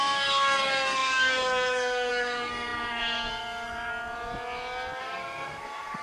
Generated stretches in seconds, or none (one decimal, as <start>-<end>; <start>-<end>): 0.0-3.9; 5.0-6.0